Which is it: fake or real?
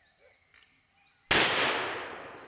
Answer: real